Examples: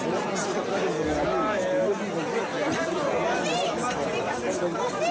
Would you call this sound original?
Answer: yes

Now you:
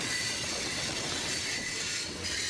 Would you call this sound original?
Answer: no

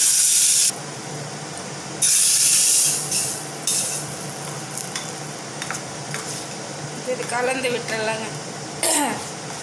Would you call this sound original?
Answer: yes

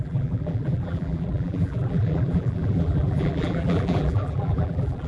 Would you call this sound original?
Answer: no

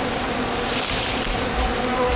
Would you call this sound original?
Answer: yes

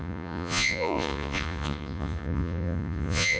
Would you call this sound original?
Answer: no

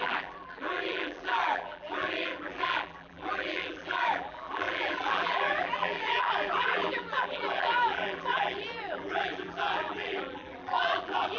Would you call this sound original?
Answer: no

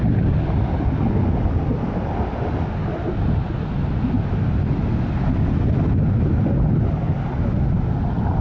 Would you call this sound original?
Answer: yes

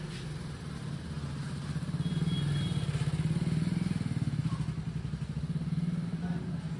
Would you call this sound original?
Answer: yes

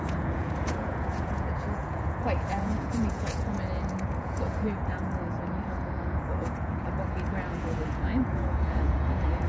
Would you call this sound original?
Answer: no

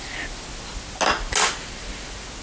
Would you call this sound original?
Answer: yes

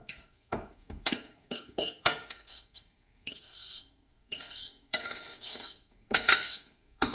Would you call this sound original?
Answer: no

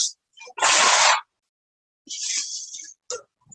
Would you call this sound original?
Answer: yes